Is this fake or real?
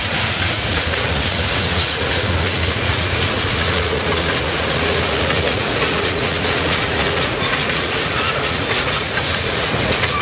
fake